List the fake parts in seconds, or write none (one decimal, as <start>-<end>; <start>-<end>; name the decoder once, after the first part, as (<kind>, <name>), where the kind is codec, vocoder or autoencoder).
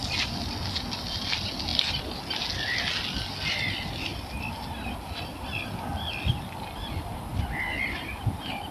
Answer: none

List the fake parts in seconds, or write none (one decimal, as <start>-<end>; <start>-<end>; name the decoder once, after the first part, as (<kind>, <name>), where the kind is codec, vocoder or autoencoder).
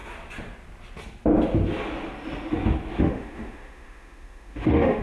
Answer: 3.0-5.0 (autoencoder, DAC-VAE)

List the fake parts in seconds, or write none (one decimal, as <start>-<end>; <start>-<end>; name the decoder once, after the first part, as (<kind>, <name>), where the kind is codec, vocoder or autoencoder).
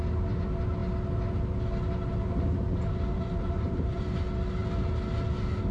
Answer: 2.1-4.0 (vocoder, BigVGAN v2)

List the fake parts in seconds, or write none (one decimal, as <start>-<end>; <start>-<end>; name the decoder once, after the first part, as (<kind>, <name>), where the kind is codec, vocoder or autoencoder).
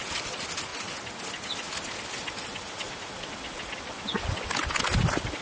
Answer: none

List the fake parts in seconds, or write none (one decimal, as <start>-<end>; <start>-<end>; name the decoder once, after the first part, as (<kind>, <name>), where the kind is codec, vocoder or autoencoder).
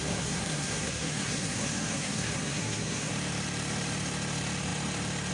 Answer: 0.0-3.1 (codec, SNAC)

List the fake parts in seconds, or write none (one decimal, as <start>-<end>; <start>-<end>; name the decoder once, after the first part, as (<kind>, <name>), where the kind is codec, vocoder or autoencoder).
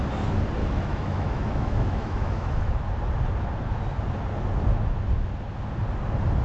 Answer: 0.6-2.8 (autoencoder, DAC-VAE)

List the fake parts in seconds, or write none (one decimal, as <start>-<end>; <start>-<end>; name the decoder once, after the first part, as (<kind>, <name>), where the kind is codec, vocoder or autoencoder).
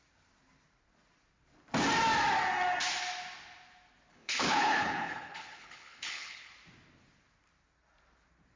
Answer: 4.1-6.5 (codec, HILCodec)